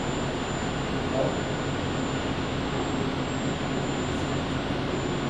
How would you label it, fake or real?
real